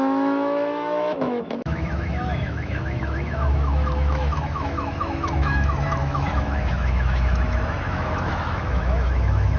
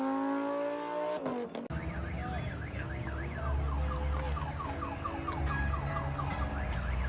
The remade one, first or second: first